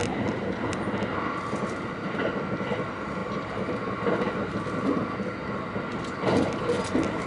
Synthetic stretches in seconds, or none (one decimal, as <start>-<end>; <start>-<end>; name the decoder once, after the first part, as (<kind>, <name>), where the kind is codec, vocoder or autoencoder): none